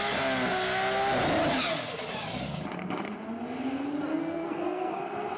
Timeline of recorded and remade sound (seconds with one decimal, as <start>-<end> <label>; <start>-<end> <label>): 0.0-4.2 recorded; 4.2-5.0 remade; 5.0-5.4 recorded